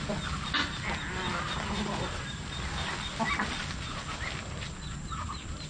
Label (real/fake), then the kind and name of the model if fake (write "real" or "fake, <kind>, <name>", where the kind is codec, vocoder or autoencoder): real